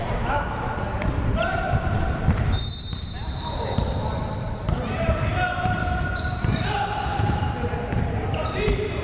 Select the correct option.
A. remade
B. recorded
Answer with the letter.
A